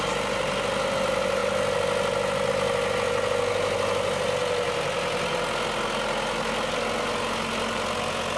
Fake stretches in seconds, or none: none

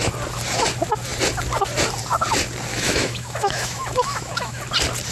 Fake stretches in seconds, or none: 2.7-4.6

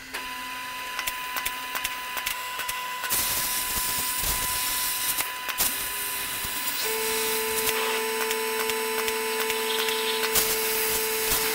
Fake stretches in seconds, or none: 2.3-3.1

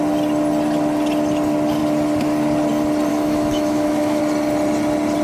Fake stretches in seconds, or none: 3.1-4.2

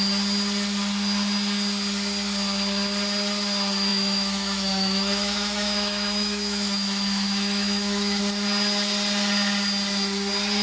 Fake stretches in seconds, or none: 3.9-8.2

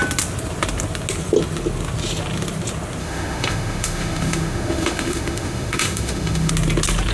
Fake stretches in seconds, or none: 3.0-6.5

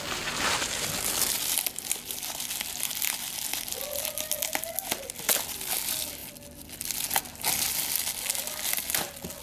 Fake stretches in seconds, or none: none